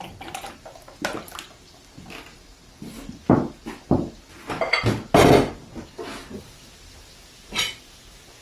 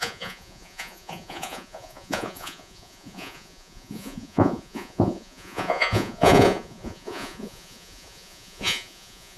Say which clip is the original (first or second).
first